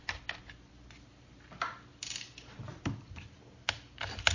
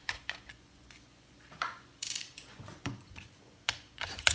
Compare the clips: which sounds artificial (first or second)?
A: second